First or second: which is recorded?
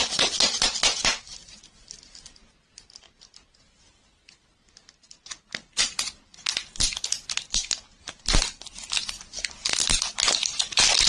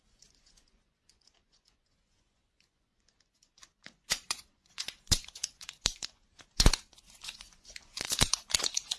first